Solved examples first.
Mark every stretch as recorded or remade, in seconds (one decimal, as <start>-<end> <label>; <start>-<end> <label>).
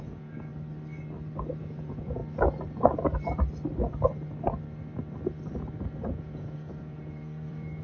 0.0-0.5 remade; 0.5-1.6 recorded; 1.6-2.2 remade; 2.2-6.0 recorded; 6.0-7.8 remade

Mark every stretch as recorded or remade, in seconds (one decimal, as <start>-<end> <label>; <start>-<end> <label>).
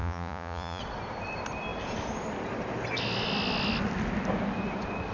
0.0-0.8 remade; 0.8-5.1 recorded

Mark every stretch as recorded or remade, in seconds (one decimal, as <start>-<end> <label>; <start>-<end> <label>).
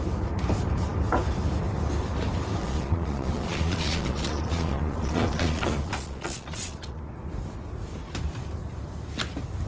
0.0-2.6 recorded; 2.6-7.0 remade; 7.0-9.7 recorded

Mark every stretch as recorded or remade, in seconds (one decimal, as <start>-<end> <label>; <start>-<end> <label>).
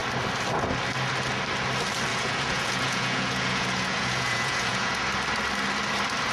0.0-2.1 recorded; 2.1-5.0 remade; 5.0-6.3 recorded